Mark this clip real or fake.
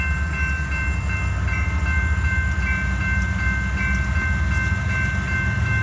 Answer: real